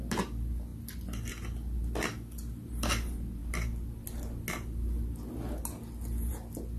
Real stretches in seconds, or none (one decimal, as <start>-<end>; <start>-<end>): 0.0-6.8